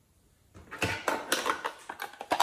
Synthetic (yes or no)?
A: no